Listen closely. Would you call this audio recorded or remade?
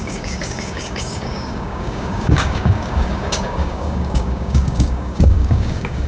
remade